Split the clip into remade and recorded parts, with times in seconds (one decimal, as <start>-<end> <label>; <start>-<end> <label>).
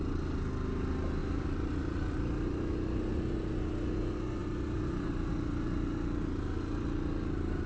0.0-1.2 recorded; 1.2-3.5 remade; 3.5-4.4 recorded; 4.4-5.3 remade; 5.3-7.7 recorded